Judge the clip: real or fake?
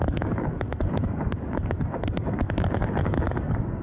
fake